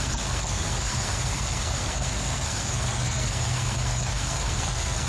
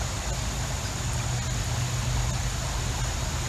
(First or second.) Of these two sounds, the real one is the second